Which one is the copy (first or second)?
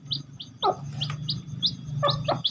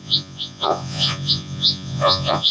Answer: second